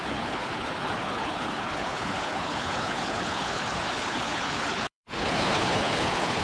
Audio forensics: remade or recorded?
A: remade